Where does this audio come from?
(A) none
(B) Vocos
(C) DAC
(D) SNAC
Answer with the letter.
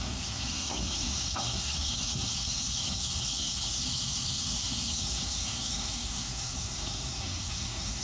D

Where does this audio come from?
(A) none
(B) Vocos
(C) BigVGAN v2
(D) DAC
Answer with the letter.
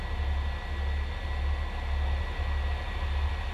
A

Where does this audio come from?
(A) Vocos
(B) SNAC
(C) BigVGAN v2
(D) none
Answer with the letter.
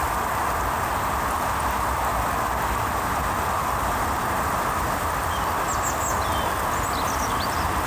C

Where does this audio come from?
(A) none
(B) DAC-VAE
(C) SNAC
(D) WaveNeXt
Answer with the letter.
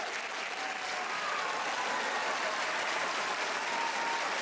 A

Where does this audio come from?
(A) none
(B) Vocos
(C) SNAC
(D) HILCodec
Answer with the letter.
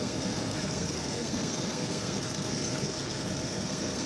C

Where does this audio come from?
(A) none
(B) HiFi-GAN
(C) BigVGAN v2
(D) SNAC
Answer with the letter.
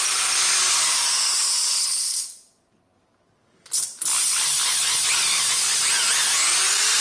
A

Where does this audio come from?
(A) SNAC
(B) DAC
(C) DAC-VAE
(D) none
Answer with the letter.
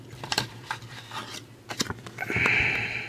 D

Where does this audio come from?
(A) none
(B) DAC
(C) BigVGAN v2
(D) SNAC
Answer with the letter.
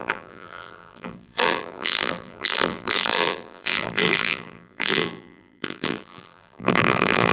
C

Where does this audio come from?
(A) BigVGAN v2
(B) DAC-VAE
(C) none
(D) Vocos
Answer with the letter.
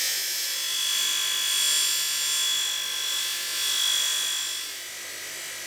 C